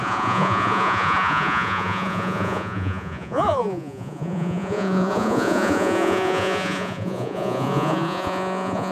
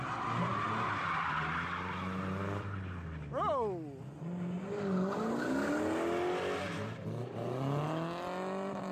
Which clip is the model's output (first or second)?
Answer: first